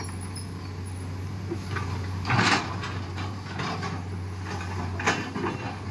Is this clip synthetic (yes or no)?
no